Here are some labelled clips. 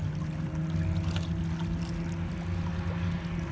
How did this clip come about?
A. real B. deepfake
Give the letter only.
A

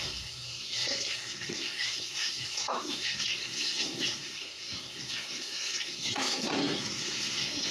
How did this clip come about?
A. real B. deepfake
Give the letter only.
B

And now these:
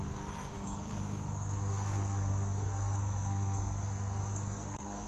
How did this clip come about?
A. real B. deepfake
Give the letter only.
B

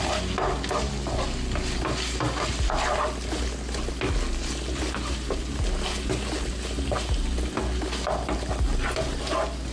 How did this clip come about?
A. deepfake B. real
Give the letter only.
B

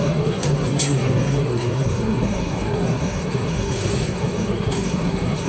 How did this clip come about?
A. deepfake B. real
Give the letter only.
A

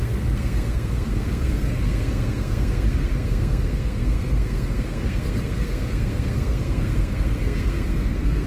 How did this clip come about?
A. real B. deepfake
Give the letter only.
B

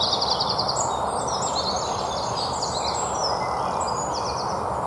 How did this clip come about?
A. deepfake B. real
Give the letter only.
B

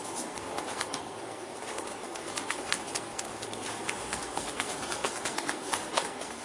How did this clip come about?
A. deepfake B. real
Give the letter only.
A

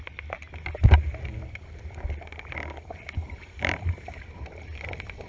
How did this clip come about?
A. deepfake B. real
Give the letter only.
B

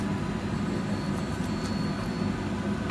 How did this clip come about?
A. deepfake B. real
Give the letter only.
B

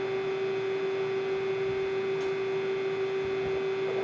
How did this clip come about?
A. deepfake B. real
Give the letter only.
B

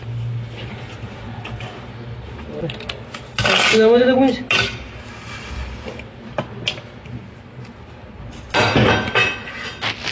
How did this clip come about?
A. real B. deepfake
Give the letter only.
A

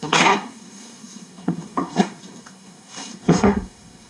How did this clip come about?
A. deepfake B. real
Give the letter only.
A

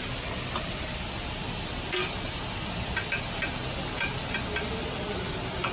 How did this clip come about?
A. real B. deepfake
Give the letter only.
A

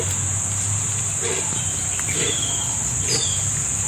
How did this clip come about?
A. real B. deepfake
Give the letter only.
A